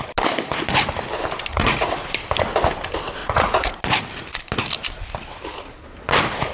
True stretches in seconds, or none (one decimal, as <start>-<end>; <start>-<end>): 0.0-1.5; 2.1-3.2; 3.7-6.5